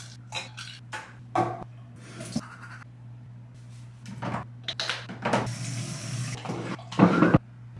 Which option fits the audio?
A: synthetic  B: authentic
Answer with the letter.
B